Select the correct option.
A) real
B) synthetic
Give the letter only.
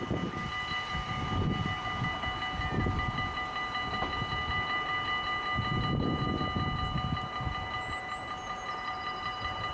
A